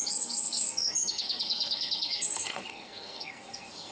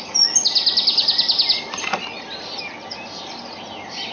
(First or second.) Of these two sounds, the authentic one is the second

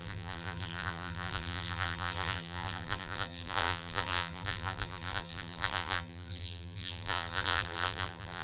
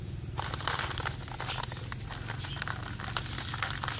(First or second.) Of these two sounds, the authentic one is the second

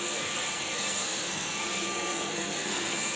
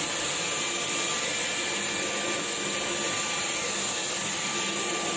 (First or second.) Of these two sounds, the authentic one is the second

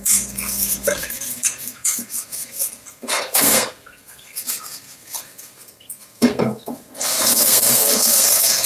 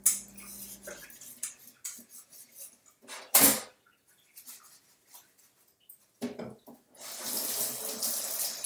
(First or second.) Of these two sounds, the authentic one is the second